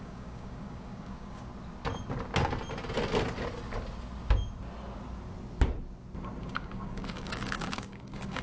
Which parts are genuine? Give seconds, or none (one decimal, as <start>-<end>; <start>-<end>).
1.5-6.4